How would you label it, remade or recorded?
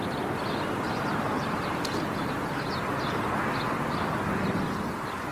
recorded